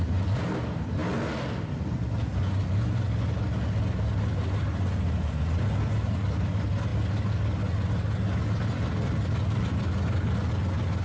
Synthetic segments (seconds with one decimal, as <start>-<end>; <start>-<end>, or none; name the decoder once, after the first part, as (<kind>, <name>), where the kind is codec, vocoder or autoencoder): none